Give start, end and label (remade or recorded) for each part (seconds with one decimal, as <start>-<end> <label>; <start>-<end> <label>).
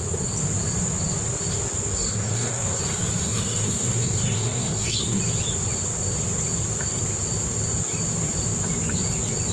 0.0-1.9 recorded; 1.9-2.8 remade; 2.8-3.2 recorded; 3.2-5.2 remade; 5.2-9.5 recorded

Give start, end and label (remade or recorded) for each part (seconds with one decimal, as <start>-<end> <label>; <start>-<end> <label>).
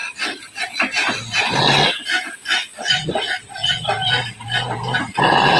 0.0-5.6 recorded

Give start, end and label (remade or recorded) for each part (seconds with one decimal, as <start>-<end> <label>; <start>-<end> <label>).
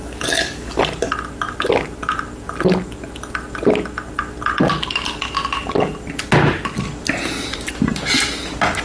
0.0-0.8 remade; 0.8-8.8 recorded